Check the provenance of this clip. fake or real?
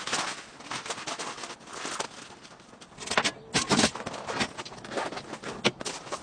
real